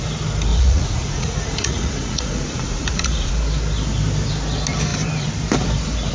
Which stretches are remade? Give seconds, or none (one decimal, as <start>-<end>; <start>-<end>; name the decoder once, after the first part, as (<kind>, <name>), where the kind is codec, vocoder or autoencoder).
0.5-3.3 (vocoder, Vocos)